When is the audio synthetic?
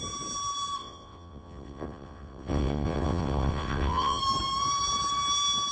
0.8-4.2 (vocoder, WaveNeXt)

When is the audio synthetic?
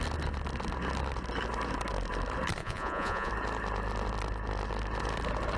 2.6-3.3 (vocoder, Vocos)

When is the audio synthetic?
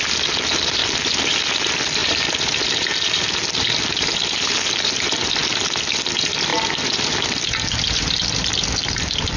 2.0-4.5 (vocoder, BigVGAN v2); 6.5-7.8